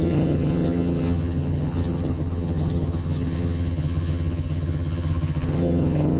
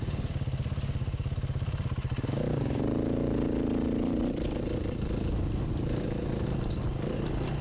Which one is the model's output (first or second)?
first